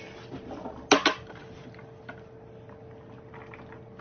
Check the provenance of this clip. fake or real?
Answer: real